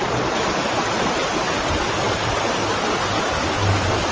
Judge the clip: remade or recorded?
recorded